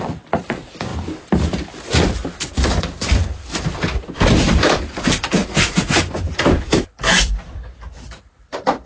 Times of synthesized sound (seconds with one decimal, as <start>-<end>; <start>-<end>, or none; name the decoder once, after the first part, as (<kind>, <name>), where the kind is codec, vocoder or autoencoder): 0.0-0.9 (vocoder, BigVGAN v2); 2.8-3.5; 4.3-5.4; 7.2-8.9